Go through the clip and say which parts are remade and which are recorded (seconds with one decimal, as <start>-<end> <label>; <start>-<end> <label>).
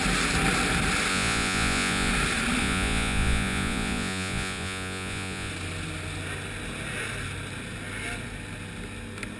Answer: 0.0-1.1 recorded; 1.1-2.1 remade; 2.1-2.6 recorded; 2.6-5.5 remade; 5.5-9.4 recorded